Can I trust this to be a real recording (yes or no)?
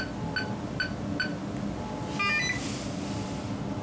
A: yes